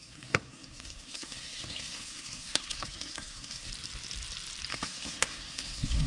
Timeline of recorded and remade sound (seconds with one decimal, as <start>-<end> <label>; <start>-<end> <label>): 0.0-3.7 remade; 3.7-4.7 recorded; 4.7-6.1 remade